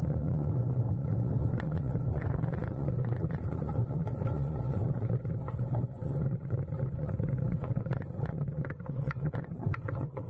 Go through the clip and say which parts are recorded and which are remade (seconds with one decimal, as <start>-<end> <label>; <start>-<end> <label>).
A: 0.0-10.3 remade